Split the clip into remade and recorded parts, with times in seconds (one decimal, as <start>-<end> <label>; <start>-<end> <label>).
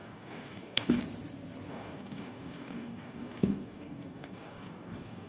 0.0-1.0 remade; 1.0-1.7 recorded; 1.7-5.3 remade